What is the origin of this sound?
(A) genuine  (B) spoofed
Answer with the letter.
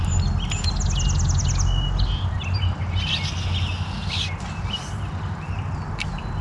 A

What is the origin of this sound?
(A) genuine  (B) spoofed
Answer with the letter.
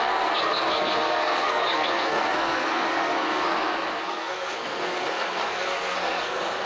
B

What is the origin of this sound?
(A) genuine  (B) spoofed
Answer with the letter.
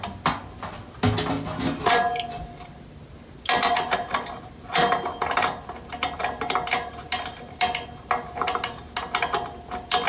A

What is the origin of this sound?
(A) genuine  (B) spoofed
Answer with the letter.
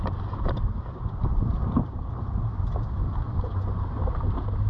A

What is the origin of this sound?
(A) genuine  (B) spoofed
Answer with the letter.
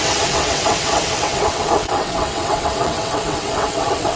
B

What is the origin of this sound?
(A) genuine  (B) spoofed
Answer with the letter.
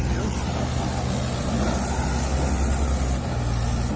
A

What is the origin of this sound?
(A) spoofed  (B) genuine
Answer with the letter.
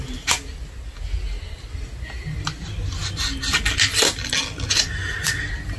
B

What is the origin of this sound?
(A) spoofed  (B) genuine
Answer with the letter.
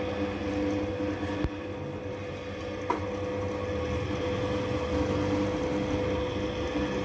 B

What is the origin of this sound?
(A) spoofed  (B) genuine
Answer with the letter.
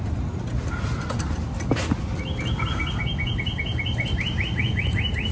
B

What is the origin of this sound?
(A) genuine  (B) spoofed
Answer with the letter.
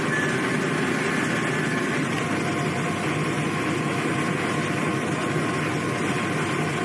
A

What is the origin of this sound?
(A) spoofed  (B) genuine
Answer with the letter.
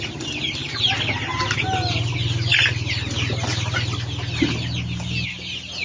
B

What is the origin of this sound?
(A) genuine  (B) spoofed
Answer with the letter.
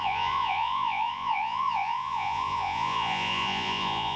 B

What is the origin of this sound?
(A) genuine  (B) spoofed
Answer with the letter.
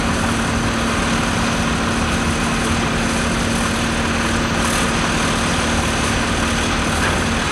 A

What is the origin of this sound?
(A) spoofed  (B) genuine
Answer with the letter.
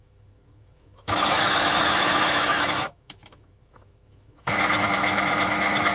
A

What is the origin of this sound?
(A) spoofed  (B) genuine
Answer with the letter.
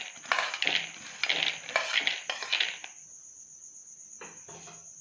B